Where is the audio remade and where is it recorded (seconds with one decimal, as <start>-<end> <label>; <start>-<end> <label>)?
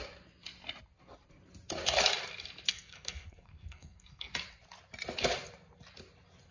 0.0-2.7 recorded; 2.7-4.3 remade; 4.3-6.5 recorded